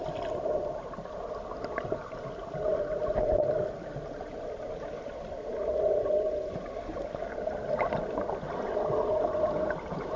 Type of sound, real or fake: real